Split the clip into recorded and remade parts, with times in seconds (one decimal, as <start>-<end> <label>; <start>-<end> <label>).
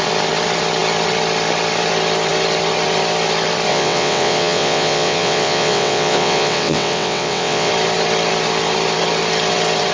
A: 0.0-3.7 recorded; 3.7-7.7 remade; 7.7-9.9 recorded